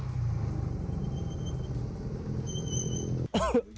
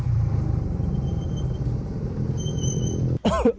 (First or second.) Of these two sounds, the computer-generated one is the second